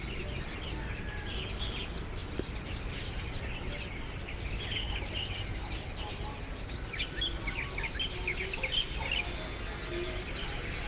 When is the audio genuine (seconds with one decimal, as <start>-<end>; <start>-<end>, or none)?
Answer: 0.0-10.9